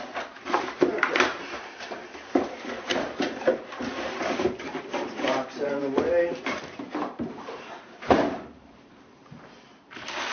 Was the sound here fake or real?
fake